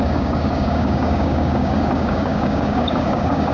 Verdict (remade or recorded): remade